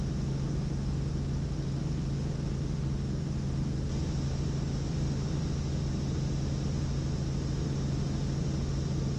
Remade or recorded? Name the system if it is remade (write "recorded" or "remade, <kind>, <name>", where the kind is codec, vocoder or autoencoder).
recorded